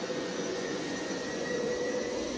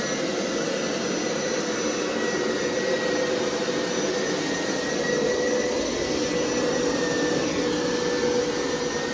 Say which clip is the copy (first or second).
first